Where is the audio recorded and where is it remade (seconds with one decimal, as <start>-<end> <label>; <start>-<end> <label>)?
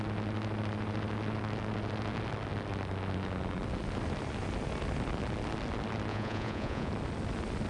0.0-6.1 recorded; 6.1-6.9 remade; 6.9-7.7 recorded